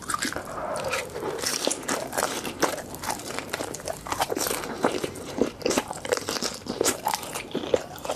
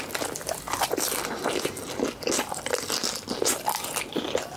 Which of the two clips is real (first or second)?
second